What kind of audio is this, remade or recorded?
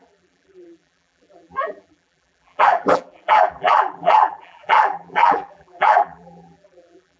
remade